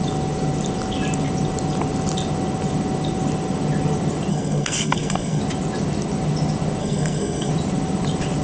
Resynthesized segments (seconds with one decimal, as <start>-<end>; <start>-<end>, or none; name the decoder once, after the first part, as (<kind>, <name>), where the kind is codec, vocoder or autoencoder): 4.3-5.4 (codec, SNAC); 6.8-7.5